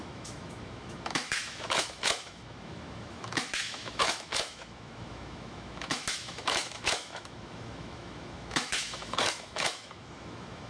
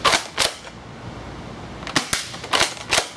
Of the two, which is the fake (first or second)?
first